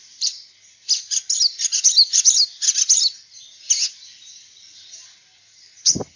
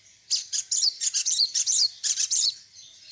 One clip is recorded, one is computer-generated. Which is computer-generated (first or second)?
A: second